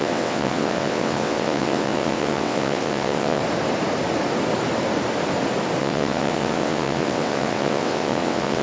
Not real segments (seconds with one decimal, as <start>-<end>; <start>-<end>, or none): 0.0-3.4; 5.8-8.6